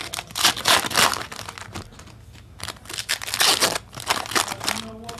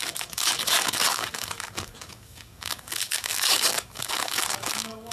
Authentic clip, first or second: first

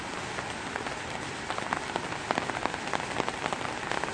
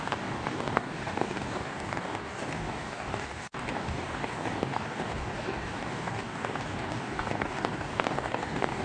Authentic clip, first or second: first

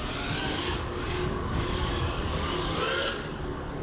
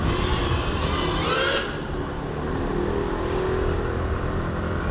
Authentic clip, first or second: second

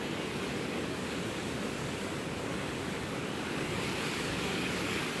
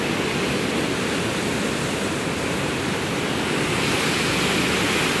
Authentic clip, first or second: second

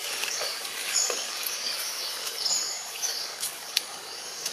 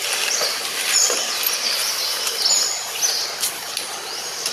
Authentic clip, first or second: second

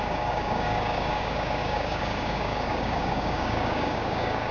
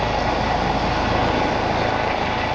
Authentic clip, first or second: second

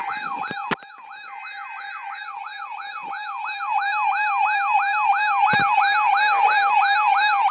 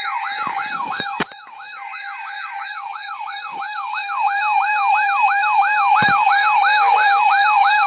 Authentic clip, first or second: first